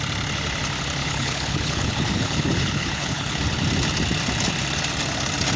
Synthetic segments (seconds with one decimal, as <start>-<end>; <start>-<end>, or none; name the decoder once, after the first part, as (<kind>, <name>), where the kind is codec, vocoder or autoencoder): 1.0-3.4 (codec, HILCodec)